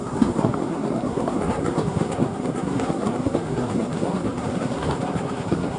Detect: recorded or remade remade